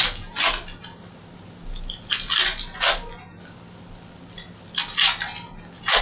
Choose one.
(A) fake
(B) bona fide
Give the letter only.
B